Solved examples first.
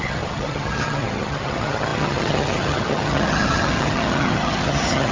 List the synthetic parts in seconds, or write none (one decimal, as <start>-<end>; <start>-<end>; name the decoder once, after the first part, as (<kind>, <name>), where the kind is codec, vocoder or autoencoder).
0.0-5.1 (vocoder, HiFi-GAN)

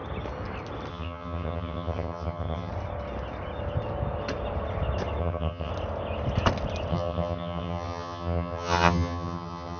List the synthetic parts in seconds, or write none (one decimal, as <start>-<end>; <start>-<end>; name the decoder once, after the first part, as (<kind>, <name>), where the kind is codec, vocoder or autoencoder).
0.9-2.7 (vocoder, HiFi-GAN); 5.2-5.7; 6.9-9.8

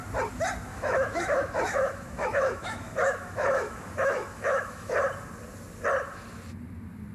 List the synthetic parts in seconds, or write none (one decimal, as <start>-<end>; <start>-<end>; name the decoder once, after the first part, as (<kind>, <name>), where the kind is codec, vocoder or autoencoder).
0.7-4.9 (autoencoder, DAC-VAE)